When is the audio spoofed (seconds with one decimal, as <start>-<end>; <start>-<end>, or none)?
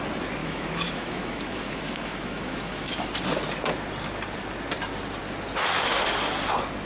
0.4-3.0